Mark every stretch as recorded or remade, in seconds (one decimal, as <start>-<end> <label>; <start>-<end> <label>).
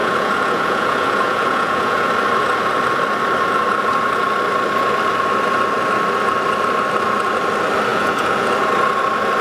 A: 0.0-2.1 remade; 2.1-7.9 recorded; 7.9-8.5 remade; 8.5-9.4 recorded